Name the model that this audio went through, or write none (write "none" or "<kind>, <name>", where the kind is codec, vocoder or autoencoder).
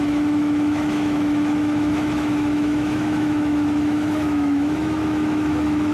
autoencoder, DAC-VAE